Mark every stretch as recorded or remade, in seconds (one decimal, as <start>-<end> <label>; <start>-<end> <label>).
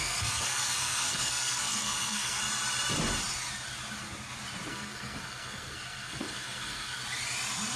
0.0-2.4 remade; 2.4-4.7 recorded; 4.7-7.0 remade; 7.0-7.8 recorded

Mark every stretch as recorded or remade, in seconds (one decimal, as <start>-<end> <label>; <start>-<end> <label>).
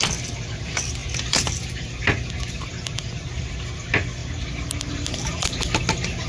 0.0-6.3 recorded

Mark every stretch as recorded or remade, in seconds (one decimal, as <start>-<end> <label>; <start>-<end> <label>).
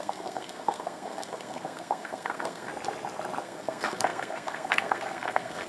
0.0-2.7 remade; 2.7-3.4 recorded; 3.4-5.7 remade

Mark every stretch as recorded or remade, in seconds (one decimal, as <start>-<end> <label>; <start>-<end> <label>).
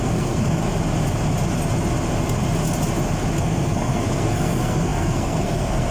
0.0-0.6 remade; 0.6-3.4 recorded; 3.4-5.9 remade